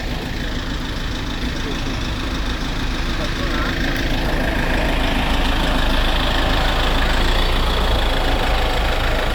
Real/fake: real